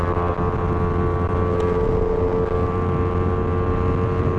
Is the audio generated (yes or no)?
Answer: no